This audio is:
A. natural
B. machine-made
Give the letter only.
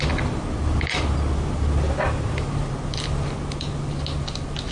A